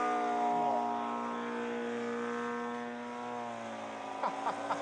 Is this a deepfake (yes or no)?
no